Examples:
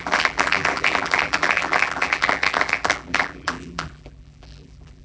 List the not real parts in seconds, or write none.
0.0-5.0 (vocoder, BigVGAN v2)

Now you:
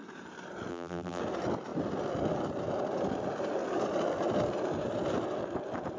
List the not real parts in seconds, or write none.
0.7-1.2 (vocoder, BigVGAN v2)